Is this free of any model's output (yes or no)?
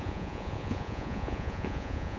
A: no